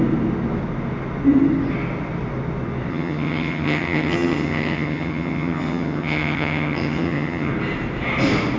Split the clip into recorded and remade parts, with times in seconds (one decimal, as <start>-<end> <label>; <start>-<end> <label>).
0.0-2.9 recorded; 2.9-7.5 remade; 7.5-8.6 recorded